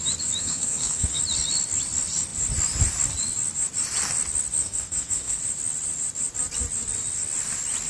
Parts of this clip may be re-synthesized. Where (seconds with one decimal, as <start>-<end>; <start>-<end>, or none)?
0.4-1.2; 4.6-5.4